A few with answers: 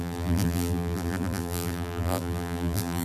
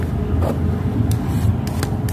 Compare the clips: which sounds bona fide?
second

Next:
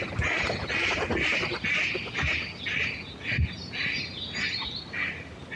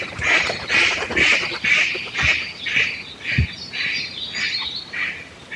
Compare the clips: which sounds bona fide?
first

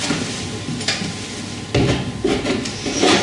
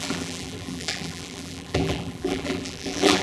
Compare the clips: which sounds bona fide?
first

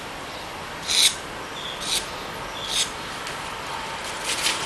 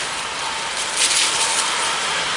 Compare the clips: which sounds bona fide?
first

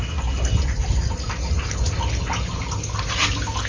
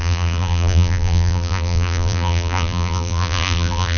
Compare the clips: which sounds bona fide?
first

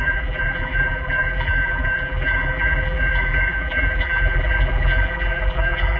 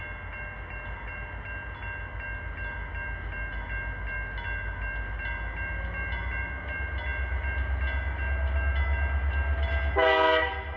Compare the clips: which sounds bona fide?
second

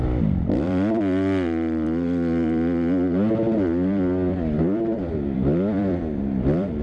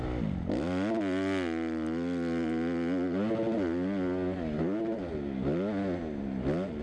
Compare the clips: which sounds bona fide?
second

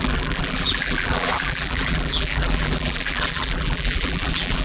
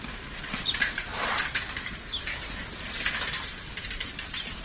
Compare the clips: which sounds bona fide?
second